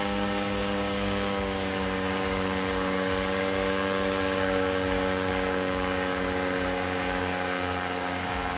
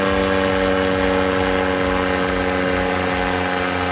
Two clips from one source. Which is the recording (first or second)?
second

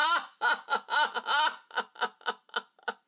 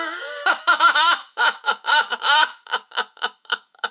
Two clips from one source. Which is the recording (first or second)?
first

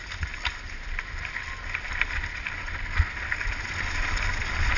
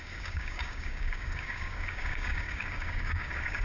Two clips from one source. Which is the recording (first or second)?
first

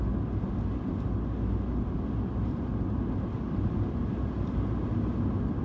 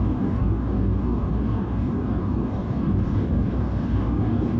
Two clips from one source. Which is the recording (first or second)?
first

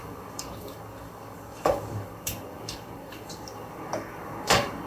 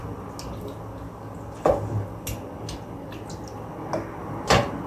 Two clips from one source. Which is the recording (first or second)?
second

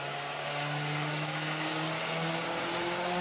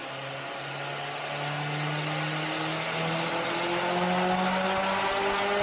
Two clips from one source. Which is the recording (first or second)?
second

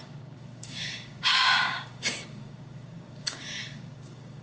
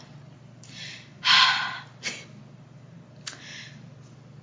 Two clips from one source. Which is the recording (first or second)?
second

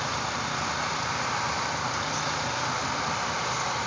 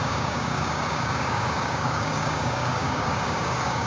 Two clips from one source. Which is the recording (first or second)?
first